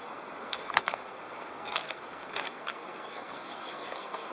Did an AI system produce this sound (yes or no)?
yes